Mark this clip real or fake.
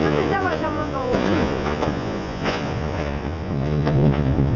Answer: fake